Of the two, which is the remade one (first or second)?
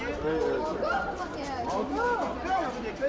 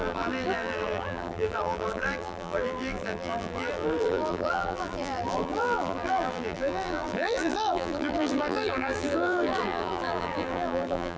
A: second